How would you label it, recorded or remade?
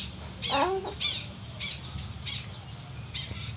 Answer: recorded